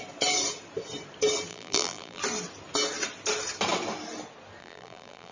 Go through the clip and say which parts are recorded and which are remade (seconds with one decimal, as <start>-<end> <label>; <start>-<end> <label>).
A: 0.0-1.5 recorded; 1.5-2.2 remade; 2.2-4.6 recorded; 4.6-5.3 remade